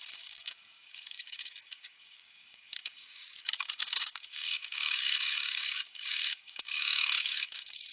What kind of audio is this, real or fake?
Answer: fake